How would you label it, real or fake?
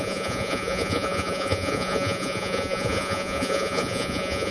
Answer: fake